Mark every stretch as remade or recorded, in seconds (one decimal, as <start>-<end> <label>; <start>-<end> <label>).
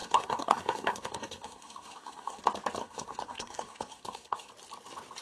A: 0.0-2.4 remade; 2.4-2.8 recorded; 2.8-4.5 remade; 4.5-5.2 recorded